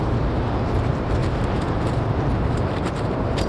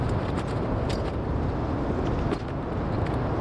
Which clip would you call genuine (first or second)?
second